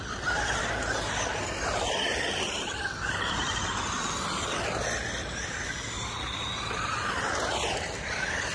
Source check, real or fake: real